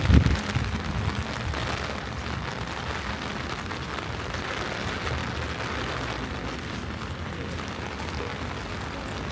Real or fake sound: real